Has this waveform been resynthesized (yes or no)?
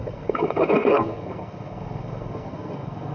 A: yes